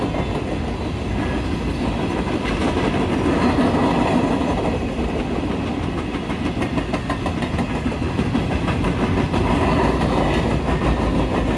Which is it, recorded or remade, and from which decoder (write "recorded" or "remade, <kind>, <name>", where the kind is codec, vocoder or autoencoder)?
recorded